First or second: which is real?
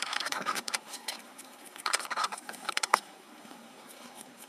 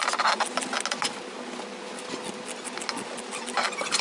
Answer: second